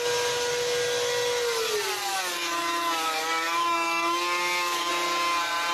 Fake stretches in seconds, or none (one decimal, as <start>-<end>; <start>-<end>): 2.0-4.9